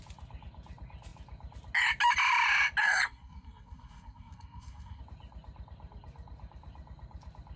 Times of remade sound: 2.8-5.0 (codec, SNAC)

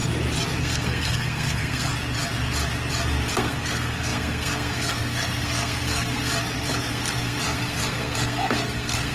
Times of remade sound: 0.6-1.9 (codec, SNAC); 3.3-6.3; 6.9-9.1

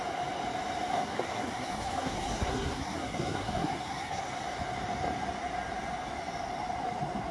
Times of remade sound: 0.9-4.2 (codec, SNAC)

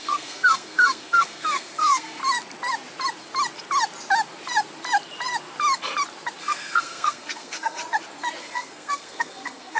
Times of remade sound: 0.0-2.2 (codec, SNAC); 6.4-7.8; 8.4-9.8

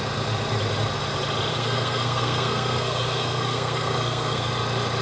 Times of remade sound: 1.5-4.5 (codec, SNAC)

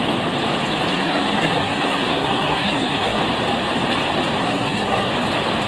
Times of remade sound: 0.9-3.2 (codec, SNAC); 4.4-5.1

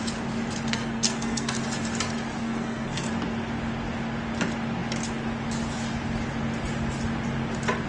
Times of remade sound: 0.7-1.6 (codec, SNAC); 2.4-3.1

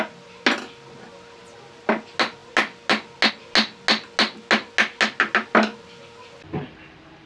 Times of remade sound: none